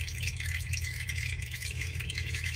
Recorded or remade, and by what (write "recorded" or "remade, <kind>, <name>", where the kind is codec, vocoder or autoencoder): remade, autoencoder, DAC-VAE